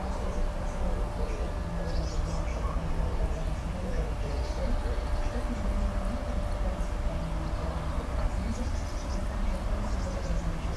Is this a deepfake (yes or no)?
no